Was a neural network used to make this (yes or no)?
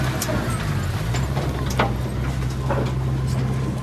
no